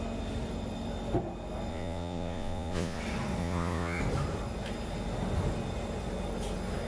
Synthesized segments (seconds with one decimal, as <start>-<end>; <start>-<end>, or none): 1.7-3.0; 3.4-4.0